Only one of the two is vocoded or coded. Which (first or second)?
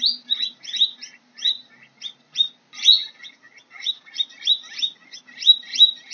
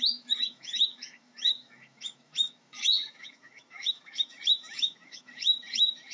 second